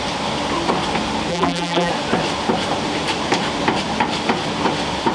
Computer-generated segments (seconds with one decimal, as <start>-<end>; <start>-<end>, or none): 1.3-1.9